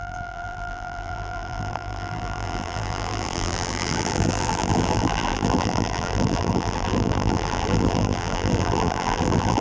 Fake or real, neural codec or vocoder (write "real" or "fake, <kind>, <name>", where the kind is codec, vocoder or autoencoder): fake, vocoder, BigVGAN v2